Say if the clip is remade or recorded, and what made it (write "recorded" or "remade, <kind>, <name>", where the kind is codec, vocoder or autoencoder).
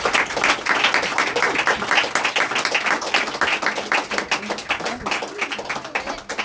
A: recorded